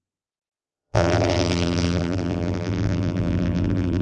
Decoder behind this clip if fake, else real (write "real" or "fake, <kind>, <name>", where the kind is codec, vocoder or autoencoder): fake, vocoder, BigVGAN v2